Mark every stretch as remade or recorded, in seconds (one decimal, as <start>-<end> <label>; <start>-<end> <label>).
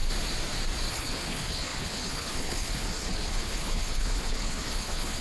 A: 0.0-0.9 recorded; 0.9-5.2 remade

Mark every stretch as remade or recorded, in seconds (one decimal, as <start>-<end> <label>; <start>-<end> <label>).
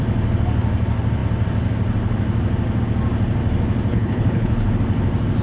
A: 0.0-3.9 recorded; 3.9-4.7 remade; 4.7-5.4 recorded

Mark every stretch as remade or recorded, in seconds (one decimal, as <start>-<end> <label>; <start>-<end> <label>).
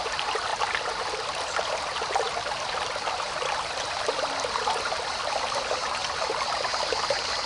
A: 0.0-7.5 recorded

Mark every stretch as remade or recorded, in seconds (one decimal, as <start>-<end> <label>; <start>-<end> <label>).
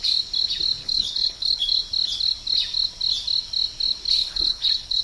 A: 0.0-0.8 recorded; 0.8-1.8 remade; 1.8-4.2 recorded; 4.2-5.0 remade